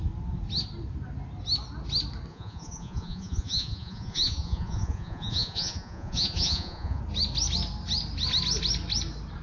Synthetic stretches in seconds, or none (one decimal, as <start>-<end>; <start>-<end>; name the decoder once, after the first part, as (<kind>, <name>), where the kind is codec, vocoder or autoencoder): 2.3-7.0 (vocoder, Vocos)